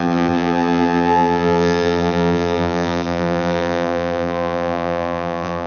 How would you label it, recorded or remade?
remade